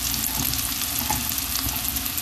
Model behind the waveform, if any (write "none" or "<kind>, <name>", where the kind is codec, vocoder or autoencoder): none